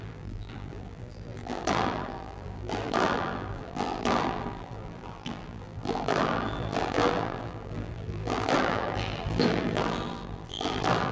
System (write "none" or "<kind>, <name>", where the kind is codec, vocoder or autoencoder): vocoder, BigVGAN v2